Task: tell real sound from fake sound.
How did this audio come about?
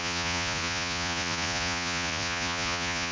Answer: fake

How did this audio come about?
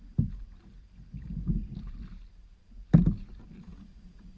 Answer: real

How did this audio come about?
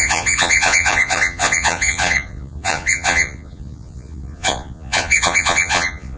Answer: fake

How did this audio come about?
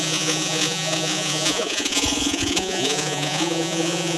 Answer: fake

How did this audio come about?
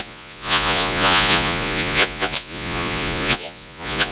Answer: fake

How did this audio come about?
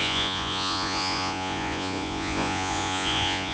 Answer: fake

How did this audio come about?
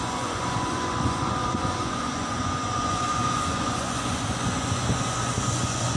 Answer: fake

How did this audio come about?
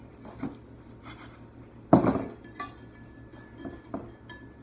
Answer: real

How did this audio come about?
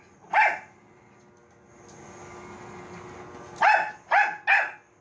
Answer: real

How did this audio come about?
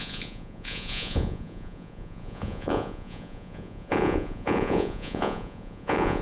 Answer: fake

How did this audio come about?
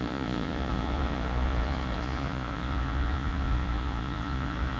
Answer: fake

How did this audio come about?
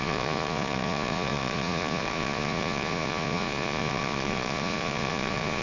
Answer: fake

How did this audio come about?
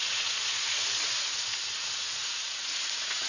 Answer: fake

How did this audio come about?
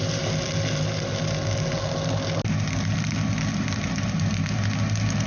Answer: real